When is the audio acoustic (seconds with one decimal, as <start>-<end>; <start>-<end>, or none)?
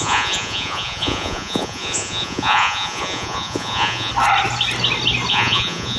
4.1-5.3